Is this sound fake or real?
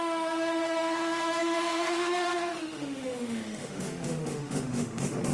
fake